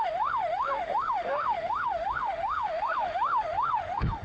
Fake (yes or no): yes